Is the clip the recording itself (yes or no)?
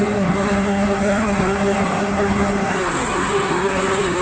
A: no